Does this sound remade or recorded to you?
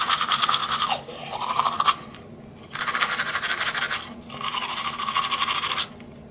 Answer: recorded